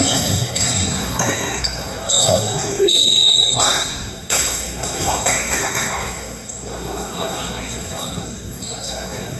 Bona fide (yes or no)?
no